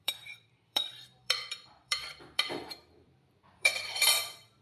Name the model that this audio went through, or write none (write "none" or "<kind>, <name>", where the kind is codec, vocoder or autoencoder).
vocoder, BigVGAN v2